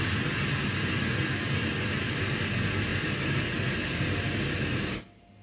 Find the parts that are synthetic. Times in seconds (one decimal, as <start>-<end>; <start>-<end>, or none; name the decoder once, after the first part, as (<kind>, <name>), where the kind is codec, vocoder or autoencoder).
none